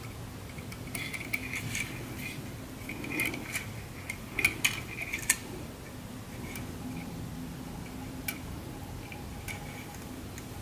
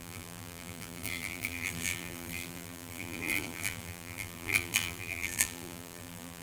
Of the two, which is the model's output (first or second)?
second